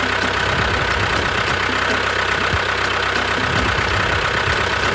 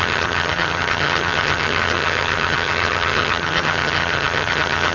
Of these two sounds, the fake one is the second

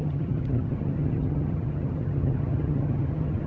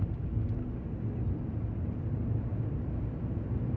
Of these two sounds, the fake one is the first